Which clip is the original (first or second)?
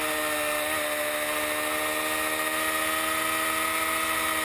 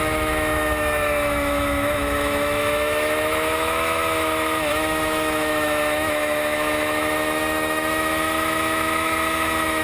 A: first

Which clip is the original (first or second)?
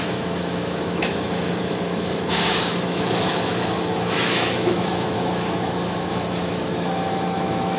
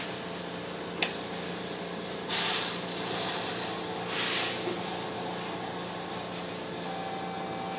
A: second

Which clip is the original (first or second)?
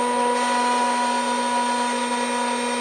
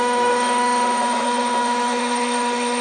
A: first